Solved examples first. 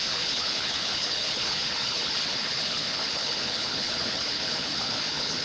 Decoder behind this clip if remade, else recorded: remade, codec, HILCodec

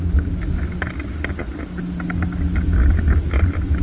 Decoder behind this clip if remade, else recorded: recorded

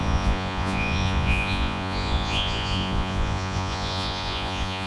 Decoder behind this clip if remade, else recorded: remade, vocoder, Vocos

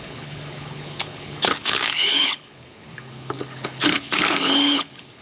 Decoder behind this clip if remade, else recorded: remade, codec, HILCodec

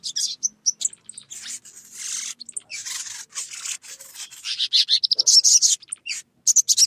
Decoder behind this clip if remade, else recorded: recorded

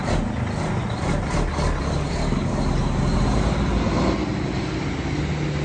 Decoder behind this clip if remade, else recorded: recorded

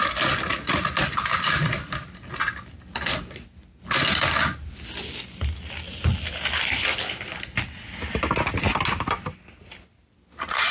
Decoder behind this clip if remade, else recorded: recorded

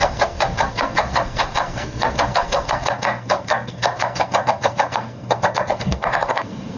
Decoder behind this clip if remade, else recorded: remade, codec, SNAC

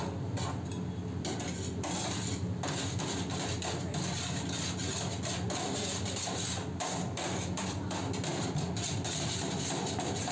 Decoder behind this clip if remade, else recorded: recorded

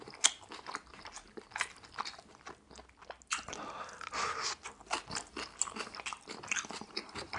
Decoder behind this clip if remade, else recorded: recorded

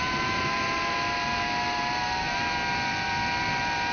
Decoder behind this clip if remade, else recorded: recorded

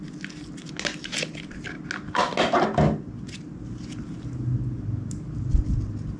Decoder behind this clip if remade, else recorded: recorded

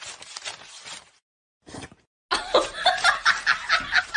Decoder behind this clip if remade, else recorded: recorded